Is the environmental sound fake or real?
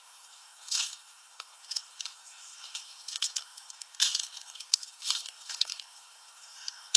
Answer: fake